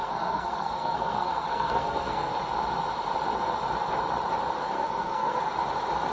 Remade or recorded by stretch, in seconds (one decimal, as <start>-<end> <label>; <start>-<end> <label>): 0.0-2.3 remade; 2.3-4.6 recorded; 4.6-5.4 remade; 5.4-6.1 recorded